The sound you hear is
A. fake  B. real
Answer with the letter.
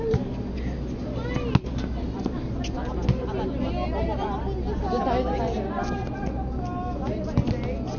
B